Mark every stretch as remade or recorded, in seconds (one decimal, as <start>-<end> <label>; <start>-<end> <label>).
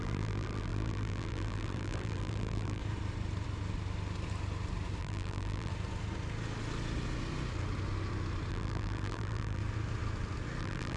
0.0-2.8 remade; 2.8-5.0 recorded; 5.0-5.7 remade; 5.7-8.5 recorded; 8.5-9.6 remade; 9.6-10.6 recorded; 10.6-11.0 remade